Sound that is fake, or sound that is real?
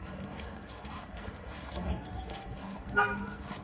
fake